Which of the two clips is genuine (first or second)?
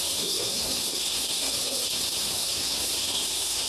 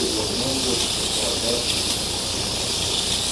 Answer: second